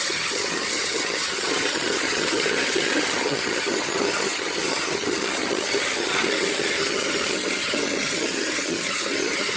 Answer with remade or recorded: remade